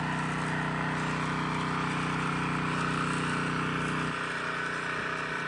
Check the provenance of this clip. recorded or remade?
recorded